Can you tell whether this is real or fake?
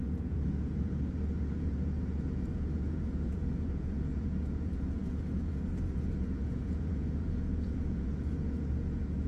fake